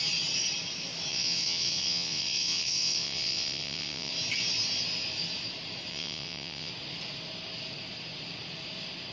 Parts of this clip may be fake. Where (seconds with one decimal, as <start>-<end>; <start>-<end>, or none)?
1.1-4.1; 5.9-6.7